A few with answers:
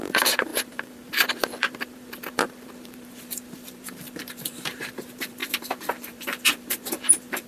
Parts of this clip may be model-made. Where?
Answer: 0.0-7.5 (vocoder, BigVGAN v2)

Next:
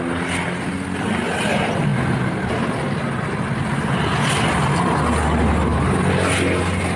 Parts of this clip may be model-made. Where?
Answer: none

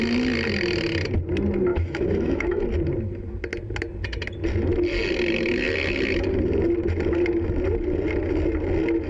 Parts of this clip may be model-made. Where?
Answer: 1.7-2.6 (autoencoder, DAC-VAE)

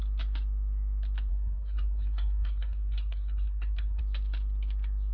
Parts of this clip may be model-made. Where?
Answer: 1.3-4.0 (codec, SNAC)

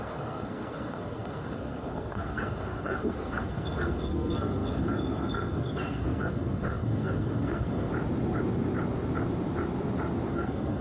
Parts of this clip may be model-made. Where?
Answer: 0.0-7.9 (codec, SNAC); 10.3-10.8

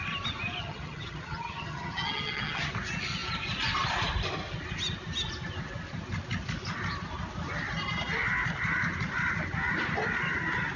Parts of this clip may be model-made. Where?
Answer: 0.6-2.7 (vocoder, HiFi-GAN)